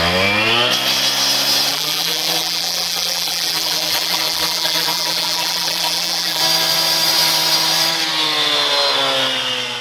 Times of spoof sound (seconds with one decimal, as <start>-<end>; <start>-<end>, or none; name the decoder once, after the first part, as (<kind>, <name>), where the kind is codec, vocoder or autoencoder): 1.7-6.4 (vocoder, BigVGAN v2)